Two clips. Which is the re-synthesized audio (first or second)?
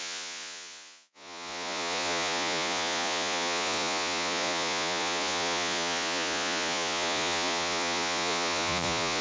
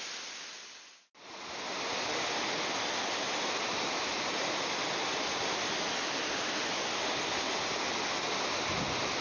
first